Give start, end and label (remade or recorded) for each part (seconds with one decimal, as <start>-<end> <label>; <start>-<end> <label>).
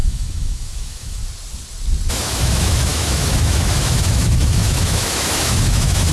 0.0-1.2 remade; 1.2-2.1 recorded; 2.1-6.1 remade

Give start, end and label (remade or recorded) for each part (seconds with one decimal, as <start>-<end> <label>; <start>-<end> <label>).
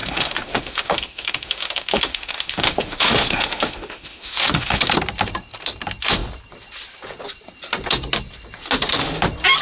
0.0-4.8 remade; 4.8-9.6 recorded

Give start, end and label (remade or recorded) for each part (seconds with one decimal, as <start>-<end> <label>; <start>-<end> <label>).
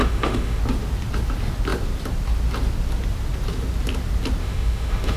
0.0-0.6 remade; 0.6-4.4 recorded; 4.4-5.2 remade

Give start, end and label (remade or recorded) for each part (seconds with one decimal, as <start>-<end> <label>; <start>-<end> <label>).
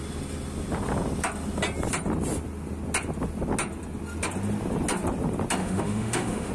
0.0-5.6 recorded; 5.6-6.5 remade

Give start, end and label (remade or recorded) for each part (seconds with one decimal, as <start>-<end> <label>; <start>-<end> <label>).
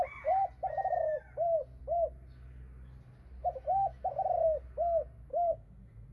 0.0-5.3 recorded; 5.3-6.1 remade